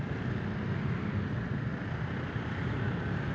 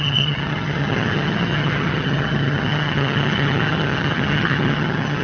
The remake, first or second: second